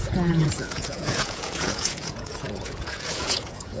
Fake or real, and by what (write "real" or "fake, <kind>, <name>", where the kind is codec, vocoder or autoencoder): fake, vocoder, Vocos